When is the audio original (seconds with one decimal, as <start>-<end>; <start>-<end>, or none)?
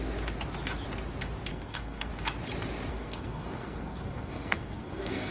0.0-1.5; 2.1-2.9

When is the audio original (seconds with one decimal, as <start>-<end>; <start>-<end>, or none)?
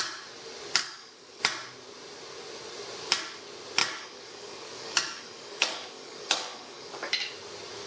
0.0-0.8; 1.4-3.8; 7.1-7.9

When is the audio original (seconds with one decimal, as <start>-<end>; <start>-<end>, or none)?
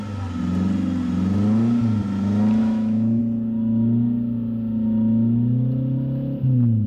0.0-2.6; 3.2-6.9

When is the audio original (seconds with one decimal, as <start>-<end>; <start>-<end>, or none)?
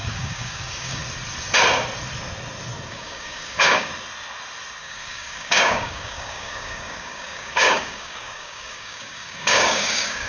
1.0-2.9; 3.9-4.8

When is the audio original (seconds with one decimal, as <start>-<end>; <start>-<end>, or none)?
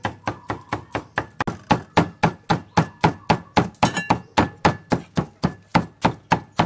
0.0-6.7